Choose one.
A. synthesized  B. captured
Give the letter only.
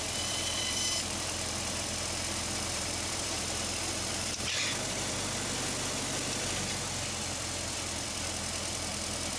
A